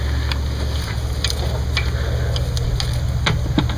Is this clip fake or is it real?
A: real